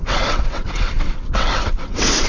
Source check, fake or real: fake